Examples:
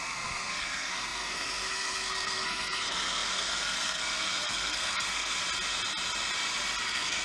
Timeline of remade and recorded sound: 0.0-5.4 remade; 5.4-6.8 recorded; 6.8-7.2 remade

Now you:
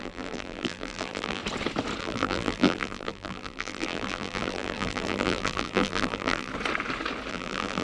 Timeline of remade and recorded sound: 0.0-1.4 remade; 1.4-2.0 recorded; 2.0-6.5 remade; 6.5-7.3 recorded; 7.3-7.8 remade

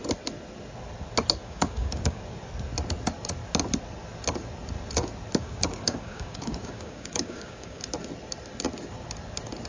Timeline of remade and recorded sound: 0.0-1.4 recorded; 1.4-2.2 remade; 2.2-5.4 recorded; 5.4-7.8 remade; 7.8-9.7 recorded

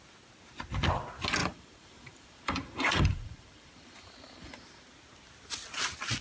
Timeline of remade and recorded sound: 0.0-1.4 recorded; 1.4-4.5 remade; 4.5-6.2 recorded

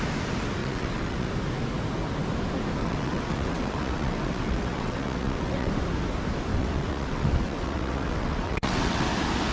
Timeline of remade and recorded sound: 0.0-0.6 recorded; 0.6-1.3 remade; 1.3-2.8 recorded; 2.8-5.7 remade; 5.7-6.5 recorded; 6.5-9.1 remade; 9.1-9.5 recorded

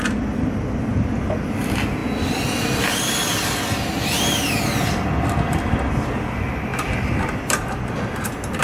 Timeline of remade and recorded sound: 0.0-8.6 recorded